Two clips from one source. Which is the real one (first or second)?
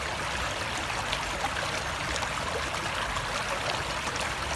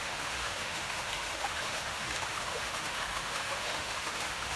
first